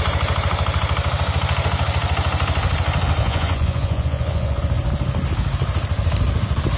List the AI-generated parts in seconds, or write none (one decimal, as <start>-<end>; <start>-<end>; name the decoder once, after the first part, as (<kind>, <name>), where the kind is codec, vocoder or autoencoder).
3.2-4.6 (vocoder, Vocos)